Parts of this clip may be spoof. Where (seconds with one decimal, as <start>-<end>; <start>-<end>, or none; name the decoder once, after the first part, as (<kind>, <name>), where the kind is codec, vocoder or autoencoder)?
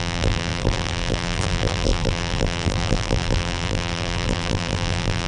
0.0-5.3 (vocoder, BigVGAN v2)